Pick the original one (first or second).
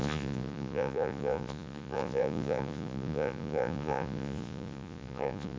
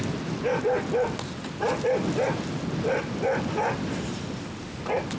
second